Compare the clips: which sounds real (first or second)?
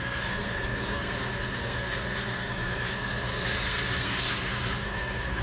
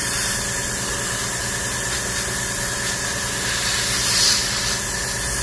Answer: second